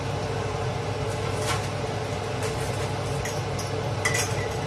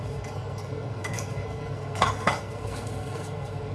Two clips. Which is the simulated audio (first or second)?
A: second